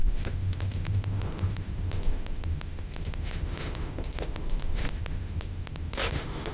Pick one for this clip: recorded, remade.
remade